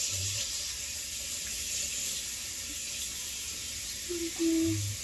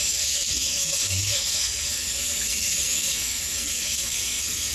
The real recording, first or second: first